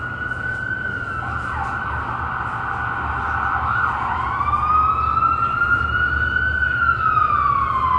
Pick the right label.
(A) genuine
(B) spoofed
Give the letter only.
A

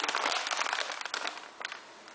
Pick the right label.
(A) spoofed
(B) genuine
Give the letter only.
B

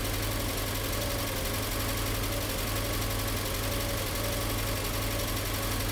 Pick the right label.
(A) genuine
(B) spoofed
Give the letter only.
A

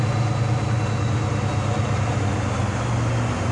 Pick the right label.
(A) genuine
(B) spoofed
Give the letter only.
A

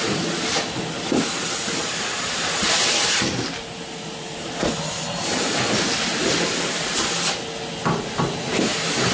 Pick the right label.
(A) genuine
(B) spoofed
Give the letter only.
A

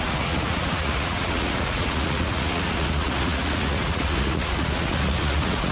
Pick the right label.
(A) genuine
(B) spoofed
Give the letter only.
B